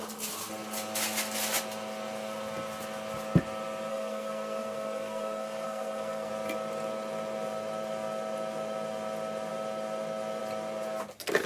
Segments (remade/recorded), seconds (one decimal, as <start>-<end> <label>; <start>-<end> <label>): 0.0-3.9 recorded; 3.9-6.3 remade; 6.3-11.5 recorded

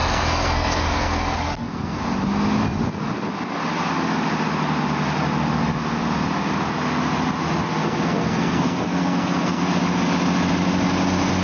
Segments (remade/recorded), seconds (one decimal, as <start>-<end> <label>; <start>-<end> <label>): 0.0-2.0 remade; 2.0-7.8 recorded; 7.8-9.6 remade; 9.6-11.4 recorded

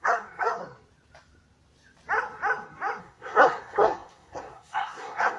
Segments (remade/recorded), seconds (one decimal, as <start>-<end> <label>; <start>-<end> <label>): 0.0-0.6 remade; 0.6-3.0 recorded; 3.0-5.4 remade

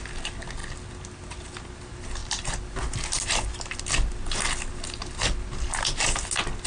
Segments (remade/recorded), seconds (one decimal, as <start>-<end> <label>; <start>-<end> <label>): 0.0-6.7 recorded